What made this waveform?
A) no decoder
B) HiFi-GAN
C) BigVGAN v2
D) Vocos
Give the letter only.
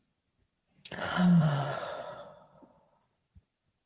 D